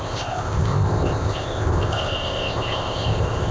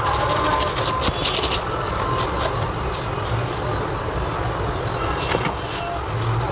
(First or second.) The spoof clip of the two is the first